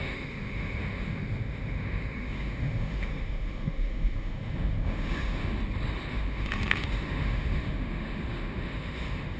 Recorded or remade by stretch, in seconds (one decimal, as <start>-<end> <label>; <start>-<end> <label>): 0.0-5.6 remade; 5.6-6.1 recorded; 6.1-9.4 remade